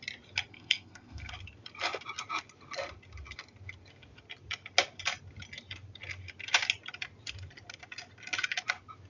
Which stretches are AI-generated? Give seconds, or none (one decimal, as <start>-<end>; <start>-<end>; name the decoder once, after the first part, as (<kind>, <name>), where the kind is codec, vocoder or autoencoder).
0.5-1.3 (codec, SNAC)